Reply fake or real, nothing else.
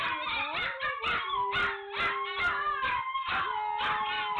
real